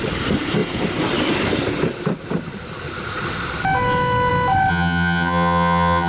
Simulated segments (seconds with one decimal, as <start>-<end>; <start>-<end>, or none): 4.7-6.1